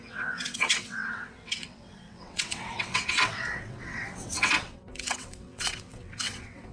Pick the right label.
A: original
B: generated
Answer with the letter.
B